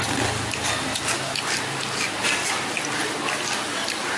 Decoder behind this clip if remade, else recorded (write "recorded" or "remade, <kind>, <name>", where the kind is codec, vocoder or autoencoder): recorded